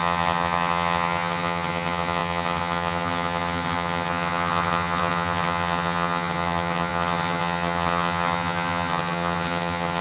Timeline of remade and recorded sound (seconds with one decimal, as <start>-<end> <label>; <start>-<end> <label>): 0.0-10.0 remade